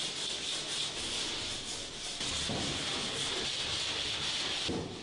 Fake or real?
real